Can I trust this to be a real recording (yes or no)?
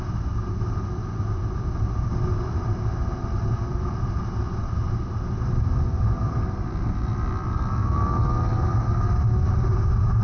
yes